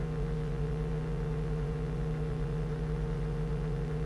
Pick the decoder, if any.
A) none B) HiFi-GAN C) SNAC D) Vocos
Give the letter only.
D